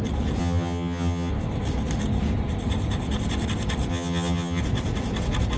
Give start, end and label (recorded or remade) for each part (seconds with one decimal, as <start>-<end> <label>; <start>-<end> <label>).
0.0-0.4 recorded; 0.4-1.3 remade; 1.3-3.9 recorded; 3.9-4.6 remade; 4.6-5.6 recorded

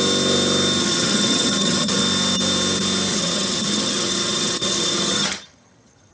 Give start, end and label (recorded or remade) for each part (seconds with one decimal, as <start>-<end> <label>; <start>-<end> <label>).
0.0-0.8 recorded; 0.8-2.0 remade; 2.0-3.1 recorded; 3.1-6.1 remade

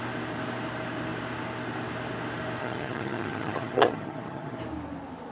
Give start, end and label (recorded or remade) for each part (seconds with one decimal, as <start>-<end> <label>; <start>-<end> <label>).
0.0-2.6 recorded; 2.6-4.6 remade; 4.6-5.3 recorded

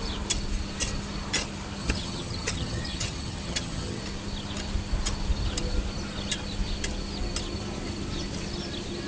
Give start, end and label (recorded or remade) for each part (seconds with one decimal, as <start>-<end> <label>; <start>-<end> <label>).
0.0-1.8 recorded; 1.8-4.0 remade; 4.0-9.1 recorded

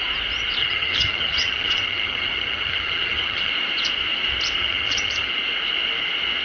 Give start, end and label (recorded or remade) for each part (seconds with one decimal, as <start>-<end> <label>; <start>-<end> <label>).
0.0-0.6 recorded; 0.6-3.5 remade; 3.5-4.6 recorded; 4.6-5.3 remade; 5.3-6.4 recorded

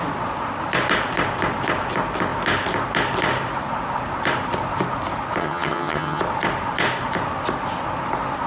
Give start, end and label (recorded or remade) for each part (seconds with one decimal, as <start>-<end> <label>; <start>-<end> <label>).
0.0-5.4 recorded; 5.4-6.2 remade; 6.2-8.5 recorded

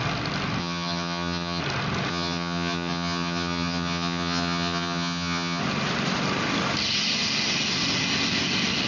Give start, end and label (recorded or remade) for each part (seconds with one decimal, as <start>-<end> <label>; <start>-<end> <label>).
0.0-0.6 recorded; 0.6-1.6 remade; 1.6-2.1 recorded; 2.1-5.6 remade; 5.6-8.9 recorded

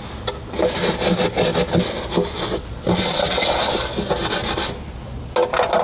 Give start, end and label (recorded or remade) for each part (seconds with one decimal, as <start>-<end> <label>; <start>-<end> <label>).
0.0-5.8 recorded